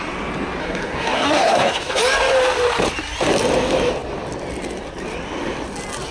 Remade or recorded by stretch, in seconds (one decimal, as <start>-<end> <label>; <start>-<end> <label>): 0.0-0.6 recorded; 0.6-2.0 remade; 2.0-6.1 recorded

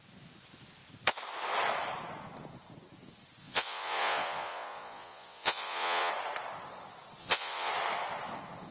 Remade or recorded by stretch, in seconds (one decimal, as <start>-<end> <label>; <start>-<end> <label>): 0.0-3.4 recorded; 3.4-6.1 remade; 6.1-7.2 recorded; 7.2-7.7 remade; 7.7-8.7 recorded